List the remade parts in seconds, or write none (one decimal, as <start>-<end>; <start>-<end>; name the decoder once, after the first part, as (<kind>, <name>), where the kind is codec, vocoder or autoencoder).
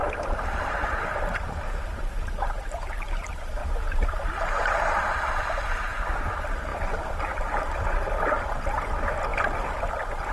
0.6-3.6 (vocoder, BigVGAN v2); 4.6-6.7; 7.6-9.3